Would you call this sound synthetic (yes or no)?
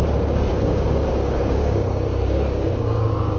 yes